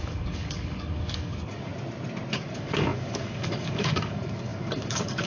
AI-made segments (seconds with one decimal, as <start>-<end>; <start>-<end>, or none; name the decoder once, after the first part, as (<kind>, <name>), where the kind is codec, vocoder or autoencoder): 0.0-1.7 (codec, DAC); 2.3-5.3